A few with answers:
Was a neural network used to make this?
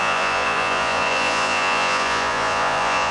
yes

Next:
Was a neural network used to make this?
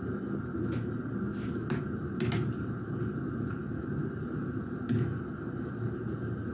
no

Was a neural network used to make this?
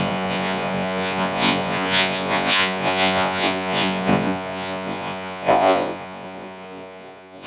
yes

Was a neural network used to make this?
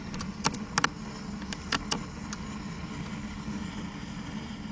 no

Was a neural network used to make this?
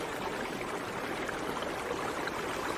no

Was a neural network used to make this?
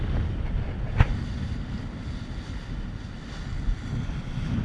no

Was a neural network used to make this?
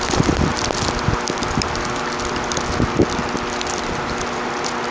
no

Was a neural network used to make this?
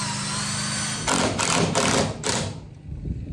no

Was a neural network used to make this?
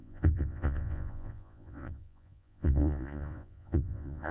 yes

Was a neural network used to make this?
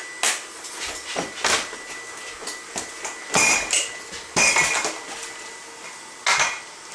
no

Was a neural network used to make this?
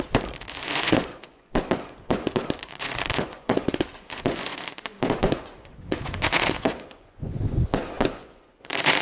yes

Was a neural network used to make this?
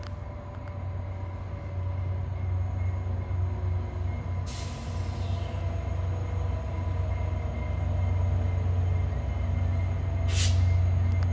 no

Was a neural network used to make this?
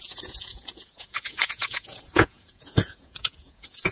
yes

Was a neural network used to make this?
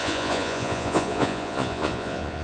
yes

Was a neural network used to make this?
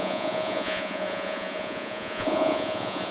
yes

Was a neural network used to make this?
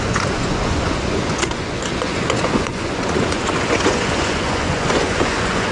yes